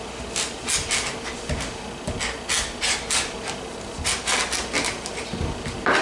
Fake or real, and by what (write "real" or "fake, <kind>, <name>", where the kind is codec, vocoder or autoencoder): real